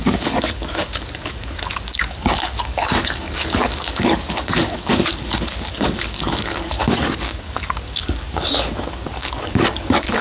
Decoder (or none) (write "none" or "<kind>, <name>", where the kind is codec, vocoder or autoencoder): codec, DAC